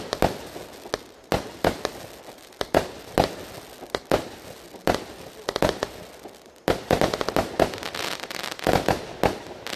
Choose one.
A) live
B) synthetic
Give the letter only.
A